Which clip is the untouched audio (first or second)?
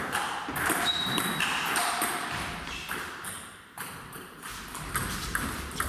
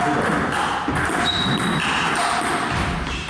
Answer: second